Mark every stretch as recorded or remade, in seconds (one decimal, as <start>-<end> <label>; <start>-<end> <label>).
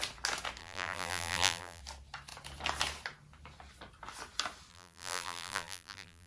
0.0-0.6 recorded; 0.6-1.8 remade; 1.8-4.7 recorded; 4.7-6.3 remade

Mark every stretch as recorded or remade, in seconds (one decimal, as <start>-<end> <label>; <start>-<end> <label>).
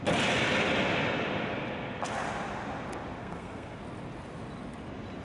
0.0-3.2 recorded; 3.2-3.8 remade; 3.8-5.2 recorded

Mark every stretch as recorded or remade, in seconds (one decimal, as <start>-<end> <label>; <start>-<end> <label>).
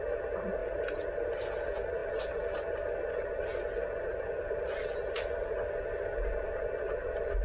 0.0-7.4 recorded